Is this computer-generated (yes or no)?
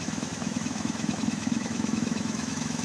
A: yes